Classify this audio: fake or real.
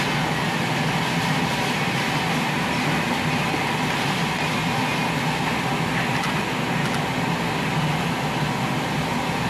real